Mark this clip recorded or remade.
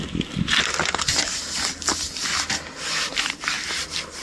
recorded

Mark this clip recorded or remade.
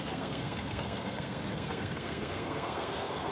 remade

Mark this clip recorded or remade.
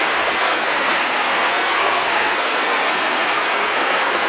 remade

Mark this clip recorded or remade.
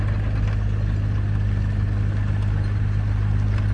recorded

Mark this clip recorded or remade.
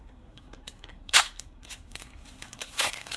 remade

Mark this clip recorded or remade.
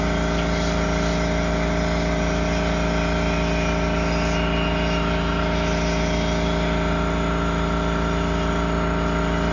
recorded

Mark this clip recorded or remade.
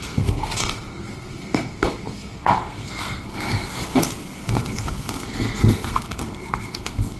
remade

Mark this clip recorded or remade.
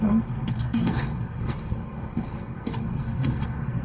remade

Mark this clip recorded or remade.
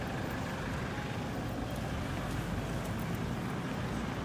recorded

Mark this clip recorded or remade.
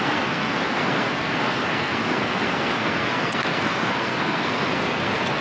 remade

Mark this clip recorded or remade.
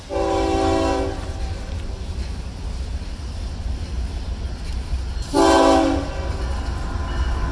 recorded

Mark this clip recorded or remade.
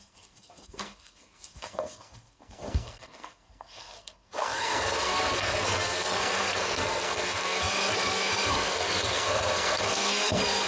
remade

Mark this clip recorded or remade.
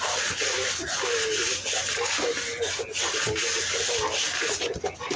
recorded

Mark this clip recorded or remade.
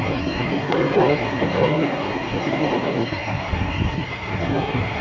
remade